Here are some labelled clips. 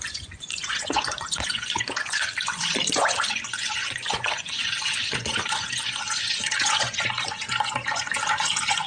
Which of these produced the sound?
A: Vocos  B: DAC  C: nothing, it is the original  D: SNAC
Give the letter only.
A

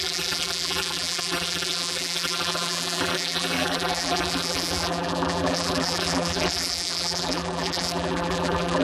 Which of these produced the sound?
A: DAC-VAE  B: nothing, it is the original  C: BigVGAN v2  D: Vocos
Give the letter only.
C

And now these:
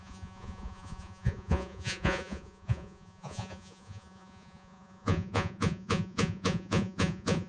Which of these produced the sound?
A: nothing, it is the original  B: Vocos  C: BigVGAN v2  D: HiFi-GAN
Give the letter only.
B